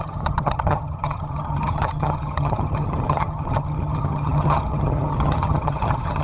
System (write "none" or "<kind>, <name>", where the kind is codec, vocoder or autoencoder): vocoder, HiFi-GAN